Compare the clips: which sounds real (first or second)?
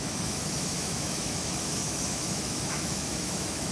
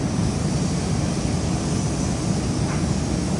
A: second